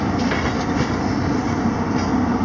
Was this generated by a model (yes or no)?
yes